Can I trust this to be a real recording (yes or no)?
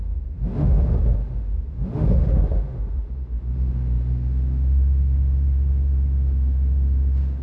no